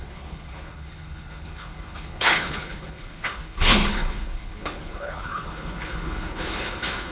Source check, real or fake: fake